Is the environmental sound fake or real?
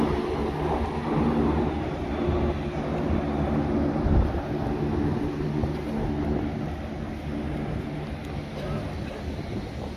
real